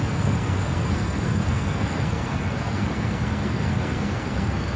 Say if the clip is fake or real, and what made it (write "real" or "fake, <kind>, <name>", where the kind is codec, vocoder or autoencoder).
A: fake, codec, SNAC